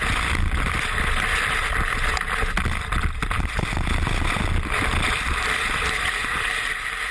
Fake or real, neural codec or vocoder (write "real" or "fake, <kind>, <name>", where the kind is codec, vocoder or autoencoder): real